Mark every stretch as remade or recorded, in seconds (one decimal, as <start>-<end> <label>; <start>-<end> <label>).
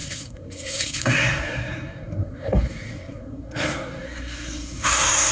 0.0-5.3 remade